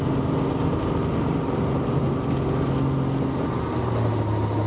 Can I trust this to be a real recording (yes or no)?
yes